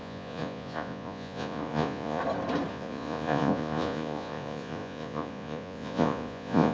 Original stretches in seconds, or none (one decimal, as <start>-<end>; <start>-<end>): 2.2-2.7